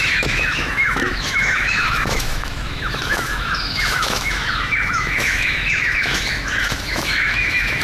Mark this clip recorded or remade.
remade